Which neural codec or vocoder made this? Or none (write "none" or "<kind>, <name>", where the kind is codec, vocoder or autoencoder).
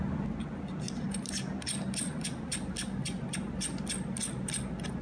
none